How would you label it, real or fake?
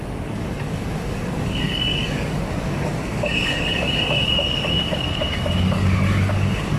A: fake